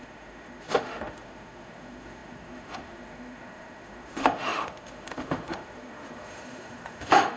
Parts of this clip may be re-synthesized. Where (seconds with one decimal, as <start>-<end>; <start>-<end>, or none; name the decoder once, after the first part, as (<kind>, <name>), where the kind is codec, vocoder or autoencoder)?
0.0-7.4 (autoencoder, DAC-VAE)